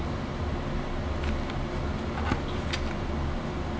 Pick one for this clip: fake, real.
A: real